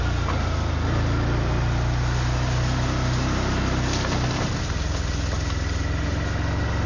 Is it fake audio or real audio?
real